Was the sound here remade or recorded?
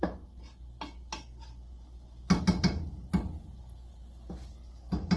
recorded